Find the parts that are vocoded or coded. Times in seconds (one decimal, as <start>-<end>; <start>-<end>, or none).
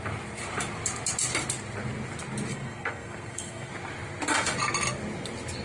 2.5-3.7